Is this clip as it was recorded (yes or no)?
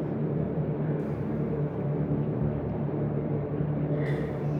no